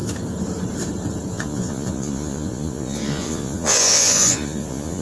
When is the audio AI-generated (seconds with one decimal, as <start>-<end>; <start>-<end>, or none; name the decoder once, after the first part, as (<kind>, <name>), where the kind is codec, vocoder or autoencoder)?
1.3-5.0 (vocoder, Vocos)